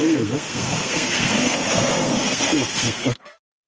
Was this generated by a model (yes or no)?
yes